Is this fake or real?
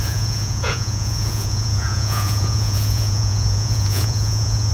fake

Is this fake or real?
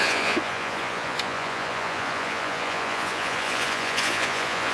fake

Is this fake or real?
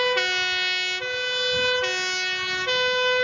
real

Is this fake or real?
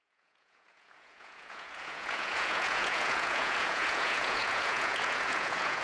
fake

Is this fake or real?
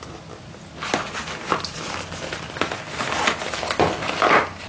real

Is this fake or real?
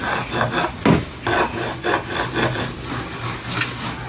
real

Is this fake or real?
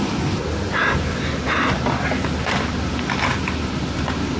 real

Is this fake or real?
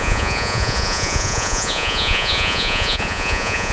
fake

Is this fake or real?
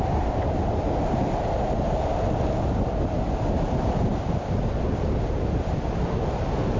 real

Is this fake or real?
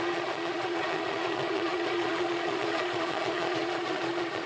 fake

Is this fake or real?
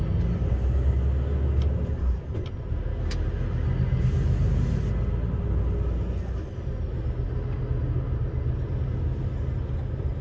real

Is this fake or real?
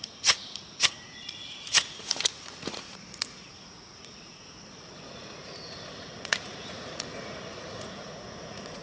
fake